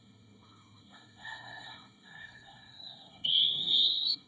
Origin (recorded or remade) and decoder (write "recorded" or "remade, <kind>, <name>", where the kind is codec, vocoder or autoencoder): remade, codec, SNAC